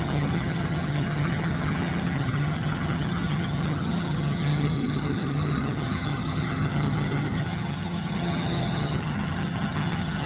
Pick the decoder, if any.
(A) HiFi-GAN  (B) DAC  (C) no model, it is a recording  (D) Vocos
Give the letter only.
A